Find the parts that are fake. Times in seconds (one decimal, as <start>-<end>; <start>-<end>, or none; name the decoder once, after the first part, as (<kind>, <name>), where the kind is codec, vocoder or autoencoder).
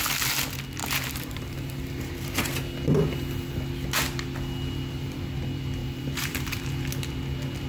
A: 0.8-2.4 (vocoder, BigVGAN v2); 5.8-6.6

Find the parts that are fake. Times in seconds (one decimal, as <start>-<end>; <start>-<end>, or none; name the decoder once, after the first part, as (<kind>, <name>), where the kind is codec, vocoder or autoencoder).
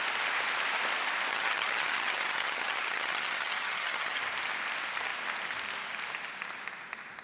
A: 1.3-4.2 (vocoder, HiFi-GAN)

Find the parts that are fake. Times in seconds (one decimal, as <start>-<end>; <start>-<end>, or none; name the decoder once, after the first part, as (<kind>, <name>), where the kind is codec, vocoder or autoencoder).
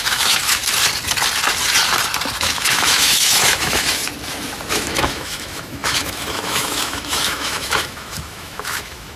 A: 0.0-0.6 (autoencoder, DAC-VAE); 2.4-4.0; 4.7-9.2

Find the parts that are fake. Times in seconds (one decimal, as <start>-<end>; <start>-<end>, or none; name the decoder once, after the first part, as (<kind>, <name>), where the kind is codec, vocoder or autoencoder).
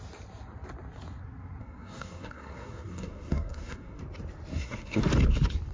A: 1.6-4.0 (codec, SNAC); 4.5-5.0